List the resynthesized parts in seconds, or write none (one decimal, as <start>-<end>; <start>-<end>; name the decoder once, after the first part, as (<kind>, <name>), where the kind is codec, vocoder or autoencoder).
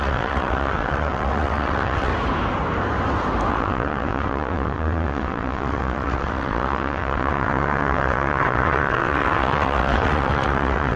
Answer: 0.0-2.1 (vocoder, WaveNeXt); 3.5-11.0